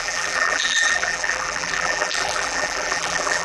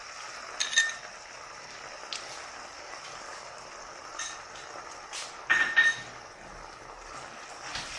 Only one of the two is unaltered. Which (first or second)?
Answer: second